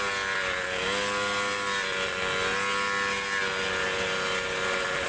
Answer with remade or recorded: recorded